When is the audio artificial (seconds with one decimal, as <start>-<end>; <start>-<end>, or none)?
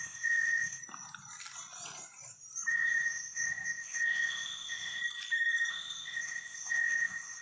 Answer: 0.0-0.8; 2.7-5.0; 5.7-7.4